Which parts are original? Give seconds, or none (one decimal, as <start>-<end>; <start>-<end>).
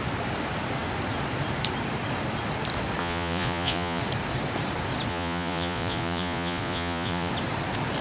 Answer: 0.0-3.0; 4.0-5.1; 7.3-8.0